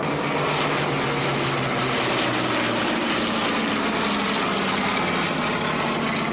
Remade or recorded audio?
recorded